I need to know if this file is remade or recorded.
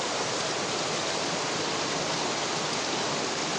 recorded